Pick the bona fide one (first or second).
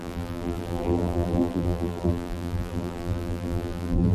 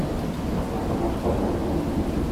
second